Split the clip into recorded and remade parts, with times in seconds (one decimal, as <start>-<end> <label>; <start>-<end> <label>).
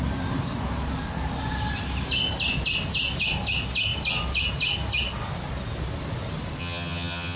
0.0-6.6 recorded; 6.6-7.4 remade